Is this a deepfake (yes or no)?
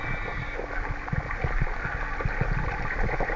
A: no